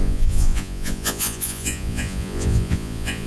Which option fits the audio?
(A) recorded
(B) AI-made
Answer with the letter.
B